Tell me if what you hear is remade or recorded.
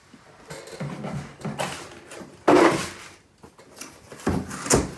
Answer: recorded